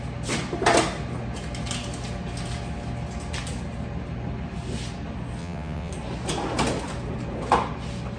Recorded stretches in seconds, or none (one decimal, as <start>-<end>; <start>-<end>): 0.0-5.4; 5.9-8.2